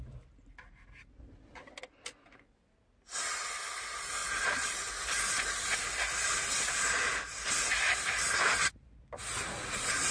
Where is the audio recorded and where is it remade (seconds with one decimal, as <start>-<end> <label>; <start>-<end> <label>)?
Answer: 0.0-10.1 recorded